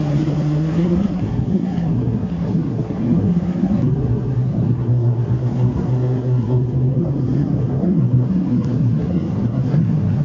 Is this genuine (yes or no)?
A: no